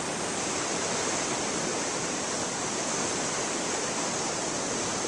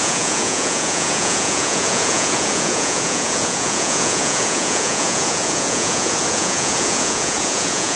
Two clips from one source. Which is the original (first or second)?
first